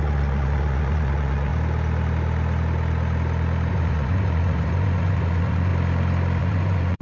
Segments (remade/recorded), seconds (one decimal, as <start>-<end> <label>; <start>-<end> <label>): 0.0-1.5 remade; 1.5-3.7 recorded; 3.7-5.7 remade; 5.7-6.4 recorded; 6.4-7.0 remade